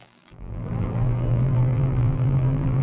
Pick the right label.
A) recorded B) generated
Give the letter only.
B